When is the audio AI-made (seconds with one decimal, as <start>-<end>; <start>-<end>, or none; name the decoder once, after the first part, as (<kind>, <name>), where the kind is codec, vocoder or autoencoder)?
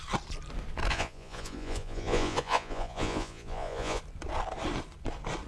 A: 0.9-4.0 (vocoder, Vocos)